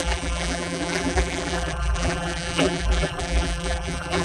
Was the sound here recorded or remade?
remade